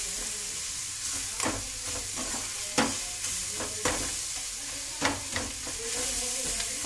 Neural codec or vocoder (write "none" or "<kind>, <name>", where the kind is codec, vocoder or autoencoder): none